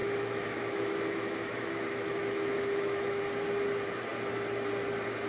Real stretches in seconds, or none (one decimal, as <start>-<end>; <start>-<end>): 3.2-5.3